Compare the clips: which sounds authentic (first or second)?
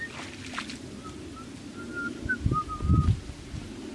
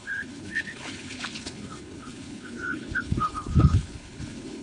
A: first